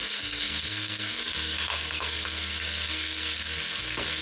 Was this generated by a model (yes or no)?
yes